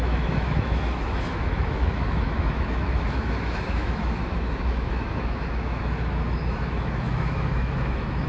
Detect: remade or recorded remade